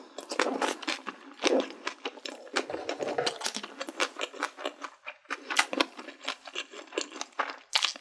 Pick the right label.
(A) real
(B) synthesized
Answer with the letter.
A